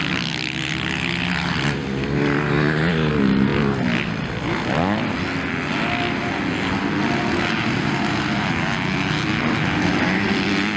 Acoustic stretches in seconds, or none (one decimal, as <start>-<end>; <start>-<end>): 0.0-10.8